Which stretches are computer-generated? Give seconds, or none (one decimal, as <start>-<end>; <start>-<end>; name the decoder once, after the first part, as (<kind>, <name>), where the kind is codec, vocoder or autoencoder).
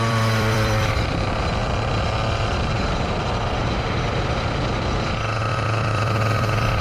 0.0-1.6 (vocoder, BigVGAN v2); 5.5-6.8